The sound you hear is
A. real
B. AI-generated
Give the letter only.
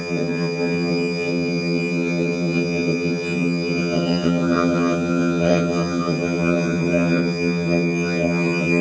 B